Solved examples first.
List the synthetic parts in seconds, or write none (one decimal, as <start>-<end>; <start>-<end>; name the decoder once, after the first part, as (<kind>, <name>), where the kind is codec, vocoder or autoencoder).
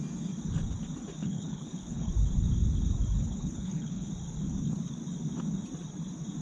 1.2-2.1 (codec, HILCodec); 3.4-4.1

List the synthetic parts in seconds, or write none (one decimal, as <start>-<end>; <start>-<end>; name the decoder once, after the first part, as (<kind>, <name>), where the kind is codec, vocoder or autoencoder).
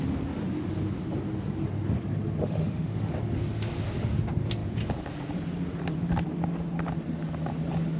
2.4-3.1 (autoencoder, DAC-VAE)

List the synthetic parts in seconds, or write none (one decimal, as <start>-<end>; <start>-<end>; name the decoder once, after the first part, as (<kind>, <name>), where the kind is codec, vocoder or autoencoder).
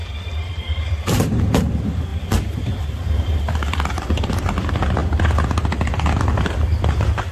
0.0-1.4 (vocoder, BigVGAN v2)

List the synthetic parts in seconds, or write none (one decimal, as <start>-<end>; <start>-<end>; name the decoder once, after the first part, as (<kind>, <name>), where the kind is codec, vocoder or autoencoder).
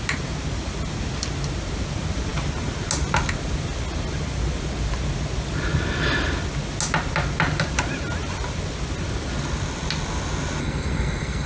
10.6-11.5 (codec, SNAC)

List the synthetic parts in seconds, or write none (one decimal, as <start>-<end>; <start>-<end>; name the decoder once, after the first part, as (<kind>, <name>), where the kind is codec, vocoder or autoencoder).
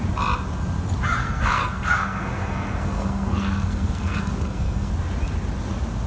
1.2-4.9 (codec, SNAC)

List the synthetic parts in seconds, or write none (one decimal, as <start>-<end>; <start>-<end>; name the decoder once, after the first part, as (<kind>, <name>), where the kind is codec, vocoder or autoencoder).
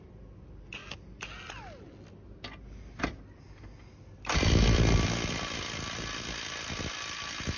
none